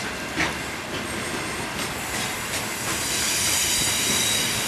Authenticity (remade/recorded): recorded